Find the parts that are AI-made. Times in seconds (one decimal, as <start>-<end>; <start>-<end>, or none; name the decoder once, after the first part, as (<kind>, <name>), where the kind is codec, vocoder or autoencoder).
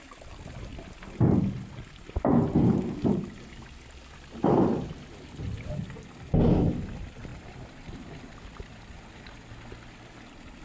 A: 7.3-8.1 (vocoder, BigVGAN v2)